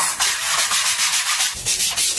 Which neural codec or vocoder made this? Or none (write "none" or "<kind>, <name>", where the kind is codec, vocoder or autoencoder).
none